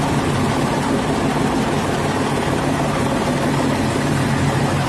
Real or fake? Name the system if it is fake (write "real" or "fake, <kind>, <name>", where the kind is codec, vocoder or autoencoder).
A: real